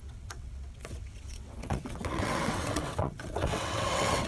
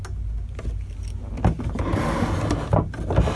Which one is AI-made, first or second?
first